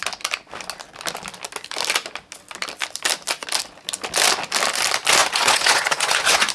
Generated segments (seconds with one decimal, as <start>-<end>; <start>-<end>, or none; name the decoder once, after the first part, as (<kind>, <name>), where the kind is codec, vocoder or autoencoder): 5.2-6.5 (vocoder, Vocos)